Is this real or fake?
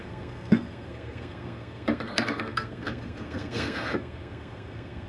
fake